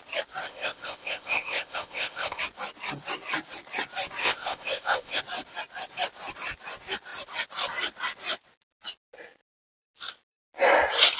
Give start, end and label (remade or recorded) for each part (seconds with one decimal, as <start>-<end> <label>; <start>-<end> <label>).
0.0-0.4 recorded; 0.4-2.4 remade; 2.4-4.2 recorded; 4.2-5.2 remade; 5.2-11.2 recorded